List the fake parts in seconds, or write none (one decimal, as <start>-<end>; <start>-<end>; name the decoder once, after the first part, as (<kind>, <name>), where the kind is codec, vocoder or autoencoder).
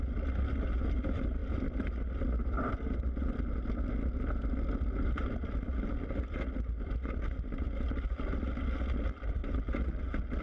none